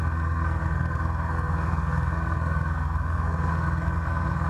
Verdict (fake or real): fake